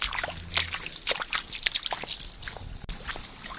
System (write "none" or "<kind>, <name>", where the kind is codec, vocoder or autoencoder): none